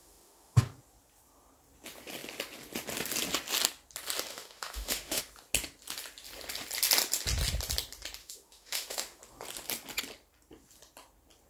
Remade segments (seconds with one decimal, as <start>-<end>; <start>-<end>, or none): 0.0-0.6; 4.3-5.2; 8.2-9.2